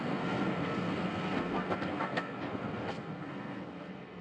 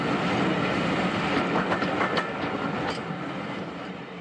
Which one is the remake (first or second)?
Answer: first